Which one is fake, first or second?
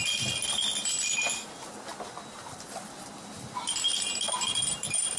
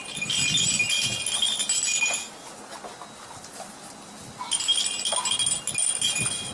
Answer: first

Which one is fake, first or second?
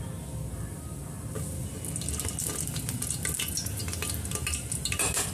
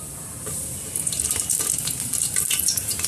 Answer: second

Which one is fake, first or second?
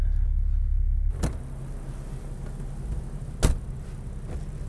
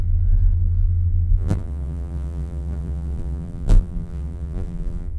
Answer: second